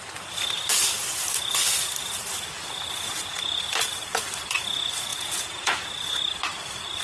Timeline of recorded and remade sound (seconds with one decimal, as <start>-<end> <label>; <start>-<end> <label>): 0.0-5.1 recorded; 5.1-5.9 remade; 5.9-7.0 recorded